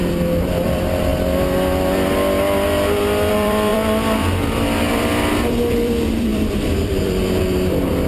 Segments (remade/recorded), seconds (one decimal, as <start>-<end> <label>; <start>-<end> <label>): 0.0-1.1 remade; 1.1-3.3 recorded; 3.3-8.1 remade